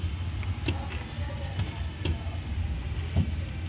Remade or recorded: recorded